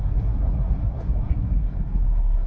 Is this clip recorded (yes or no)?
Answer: no